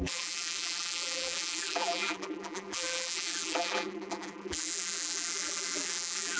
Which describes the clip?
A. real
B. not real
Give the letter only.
B